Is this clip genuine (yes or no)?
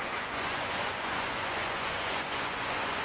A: no